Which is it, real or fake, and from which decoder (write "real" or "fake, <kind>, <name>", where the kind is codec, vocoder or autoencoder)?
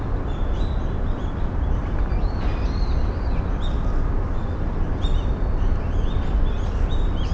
real